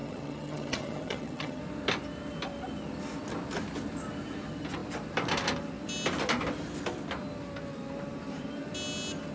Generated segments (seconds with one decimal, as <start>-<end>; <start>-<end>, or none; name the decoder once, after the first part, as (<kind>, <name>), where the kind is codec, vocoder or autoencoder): 0.0-1.6 (vocoder, HiFi-GAN)